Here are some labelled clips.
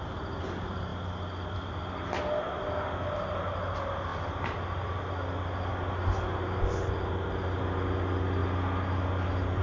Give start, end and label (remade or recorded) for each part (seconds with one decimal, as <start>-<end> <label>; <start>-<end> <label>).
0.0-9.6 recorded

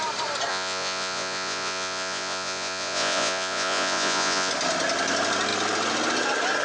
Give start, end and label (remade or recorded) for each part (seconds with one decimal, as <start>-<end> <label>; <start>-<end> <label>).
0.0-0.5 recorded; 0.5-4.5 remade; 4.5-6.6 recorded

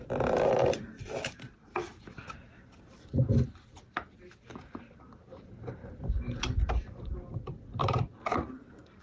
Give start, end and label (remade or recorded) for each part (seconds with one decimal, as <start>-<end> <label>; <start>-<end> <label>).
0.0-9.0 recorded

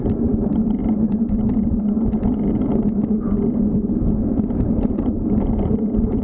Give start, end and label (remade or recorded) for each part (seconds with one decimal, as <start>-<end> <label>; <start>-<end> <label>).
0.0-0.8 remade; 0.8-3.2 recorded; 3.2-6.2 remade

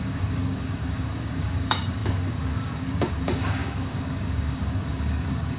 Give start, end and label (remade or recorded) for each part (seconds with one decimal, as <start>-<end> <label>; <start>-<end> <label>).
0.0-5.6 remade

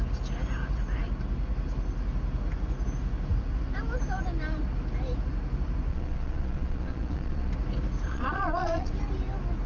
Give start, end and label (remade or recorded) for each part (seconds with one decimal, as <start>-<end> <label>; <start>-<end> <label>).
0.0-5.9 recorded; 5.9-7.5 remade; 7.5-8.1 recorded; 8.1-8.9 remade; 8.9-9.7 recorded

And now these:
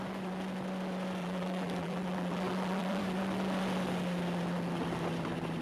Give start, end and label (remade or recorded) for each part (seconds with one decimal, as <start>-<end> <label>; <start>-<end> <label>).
0.0-1.2 recorded; 1.2-3.0 remade; 3.0-5.6 recorded

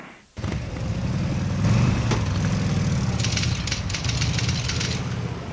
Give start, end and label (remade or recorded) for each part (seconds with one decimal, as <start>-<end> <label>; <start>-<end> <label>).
0.0-5.5 recorded